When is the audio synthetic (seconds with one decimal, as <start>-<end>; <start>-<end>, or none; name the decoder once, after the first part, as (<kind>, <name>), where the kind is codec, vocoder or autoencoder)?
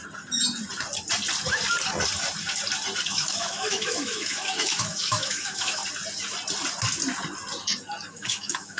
3.1-5.8 (autoencoder, DAC-VAE); 8.1-8.8